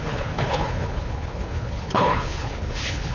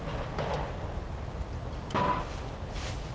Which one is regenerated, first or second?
first